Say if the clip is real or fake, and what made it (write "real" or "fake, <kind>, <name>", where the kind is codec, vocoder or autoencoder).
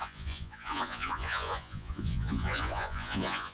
fake, vocoder, Vocos